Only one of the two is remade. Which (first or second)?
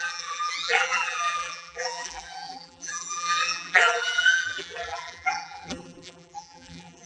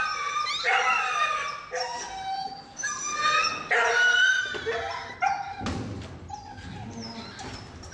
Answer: first